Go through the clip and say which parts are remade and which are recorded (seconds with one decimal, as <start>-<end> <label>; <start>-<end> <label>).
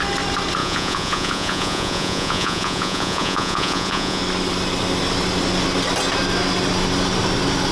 0.0-0.6 recorded; 0.6-4.2 remade; 4.2-7.7 recorded